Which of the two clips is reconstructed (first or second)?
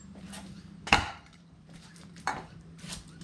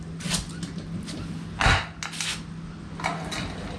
first